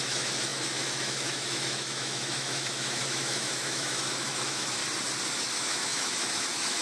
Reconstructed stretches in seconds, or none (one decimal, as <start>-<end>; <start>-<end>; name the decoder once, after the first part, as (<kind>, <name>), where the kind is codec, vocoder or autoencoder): 0.0-4.8 (autoencoder, DAC-VAE); 5.3-6.8